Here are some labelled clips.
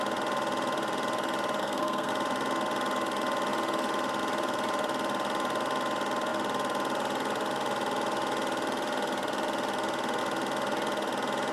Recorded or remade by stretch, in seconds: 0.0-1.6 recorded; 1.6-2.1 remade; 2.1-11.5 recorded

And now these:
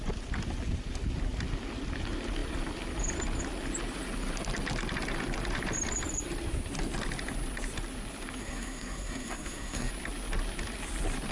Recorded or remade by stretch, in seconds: 0.0-8.4 recorded; 8.4-9.9 remade; 9.9-11.3 recorded

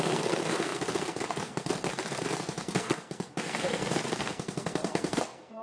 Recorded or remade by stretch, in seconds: 0.0-5.6 remade